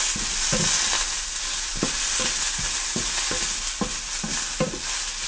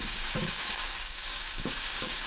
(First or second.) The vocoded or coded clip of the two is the second